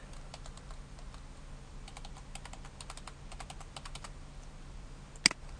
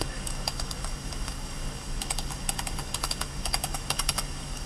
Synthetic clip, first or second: second